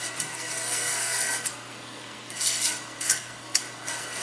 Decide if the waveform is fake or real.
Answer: fake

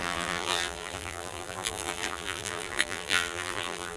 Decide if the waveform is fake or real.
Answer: fake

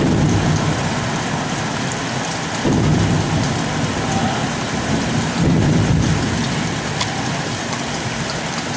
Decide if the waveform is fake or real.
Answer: real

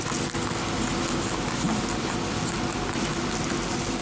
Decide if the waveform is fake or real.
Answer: real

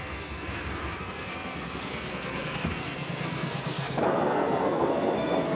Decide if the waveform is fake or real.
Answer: fake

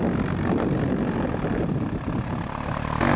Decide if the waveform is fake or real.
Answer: real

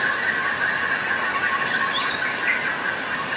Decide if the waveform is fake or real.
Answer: real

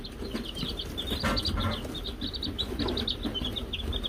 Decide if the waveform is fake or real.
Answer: real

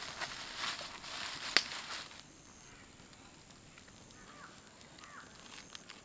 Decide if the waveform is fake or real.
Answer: real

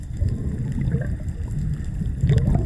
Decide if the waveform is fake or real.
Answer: real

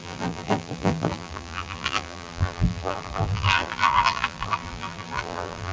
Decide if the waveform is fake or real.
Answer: fake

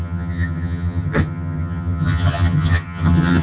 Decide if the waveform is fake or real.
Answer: fake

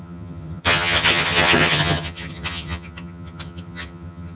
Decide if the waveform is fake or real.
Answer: fake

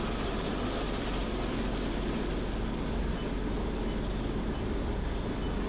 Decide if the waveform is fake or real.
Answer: real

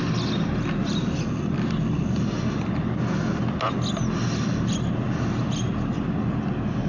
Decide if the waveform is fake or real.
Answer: real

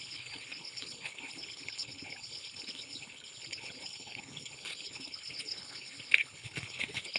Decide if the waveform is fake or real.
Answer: fake